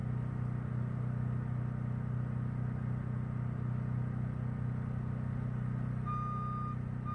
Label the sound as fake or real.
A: real